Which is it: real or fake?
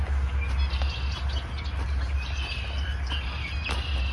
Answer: real